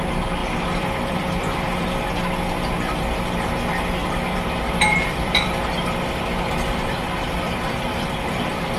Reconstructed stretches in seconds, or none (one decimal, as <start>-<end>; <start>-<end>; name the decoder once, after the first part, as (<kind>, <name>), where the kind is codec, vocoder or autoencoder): 0.4-2.1 (vocoder, BigVGAN v2); 4.0-8.8